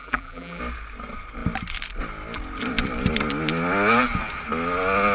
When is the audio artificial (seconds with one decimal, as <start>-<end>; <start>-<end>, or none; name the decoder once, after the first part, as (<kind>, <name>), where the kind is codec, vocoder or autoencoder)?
0.0-0.6 (vocoder, BigVGAN v2)